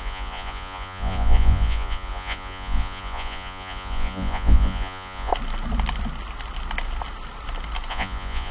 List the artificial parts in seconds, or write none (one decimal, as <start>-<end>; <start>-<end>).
0.0-5.3; 7.9-8.5